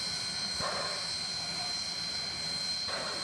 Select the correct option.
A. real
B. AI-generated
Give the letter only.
B